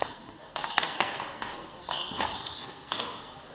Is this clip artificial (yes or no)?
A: yes